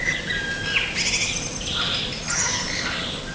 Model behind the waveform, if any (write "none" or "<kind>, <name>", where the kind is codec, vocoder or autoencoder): none